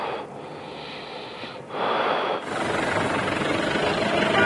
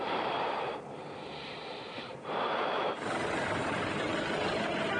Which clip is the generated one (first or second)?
second